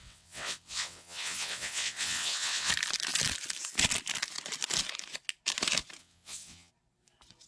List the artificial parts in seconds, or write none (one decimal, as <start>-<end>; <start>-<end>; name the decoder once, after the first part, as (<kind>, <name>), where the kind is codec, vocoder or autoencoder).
0.0-2.7 (vocoder, WaveNeXt); 6.0-6.7